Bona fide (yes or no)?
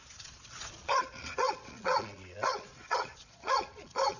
no